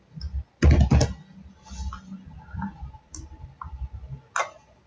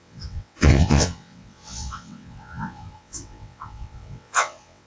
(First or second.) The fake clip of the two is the second